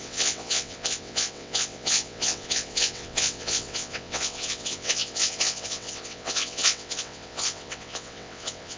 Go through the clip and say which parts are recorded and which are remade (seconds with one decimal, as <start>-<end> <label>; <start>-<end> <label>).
0.0-8.8 remade